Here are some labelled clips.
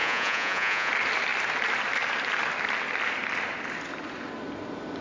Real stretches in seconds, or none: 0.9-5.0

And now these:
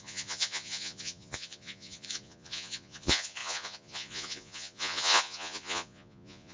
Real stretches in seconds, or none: none